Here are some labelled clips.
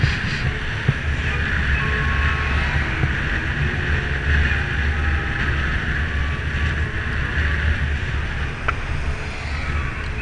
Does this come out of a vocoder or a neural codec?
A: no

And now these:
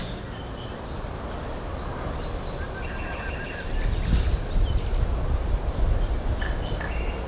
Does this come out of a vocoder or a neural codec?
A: no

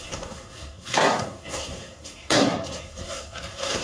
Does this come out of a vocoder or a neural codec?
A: yes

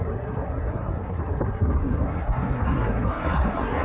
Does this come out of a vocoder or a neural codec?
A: yes